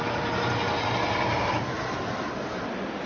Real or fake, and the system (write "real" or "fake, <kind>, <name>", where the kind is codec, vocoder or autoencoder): real